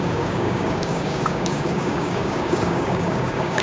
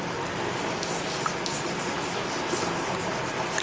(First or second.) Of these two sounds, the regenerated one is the first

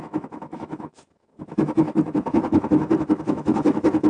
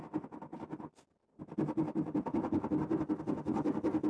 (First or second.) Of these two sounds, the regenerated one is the first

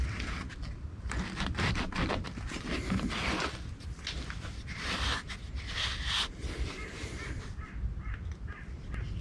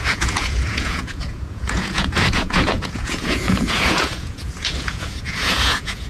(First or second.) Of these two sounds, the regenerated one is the second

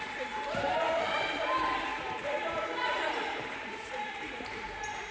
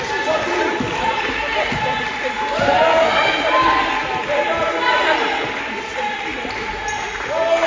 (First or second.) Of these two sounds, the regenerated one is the first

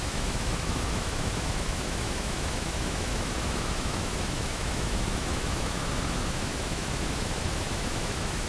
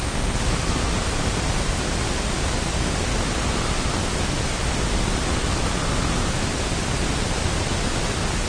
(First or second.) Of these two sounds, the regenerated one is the first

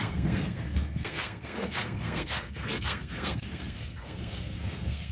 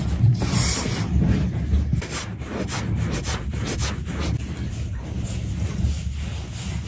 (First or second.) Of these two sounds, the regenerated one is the first